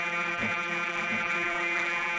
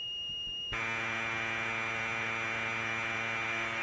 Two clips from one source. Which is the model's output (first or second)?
first